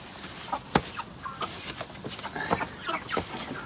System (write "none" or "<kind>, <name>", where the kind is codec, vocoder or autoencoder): none